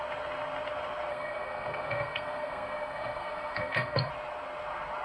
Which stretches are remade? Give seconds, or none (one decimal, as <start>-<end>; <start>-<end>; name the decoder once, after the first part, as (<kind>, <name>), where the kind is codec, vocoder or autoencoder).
1.1-4.1 (codec, SNAC)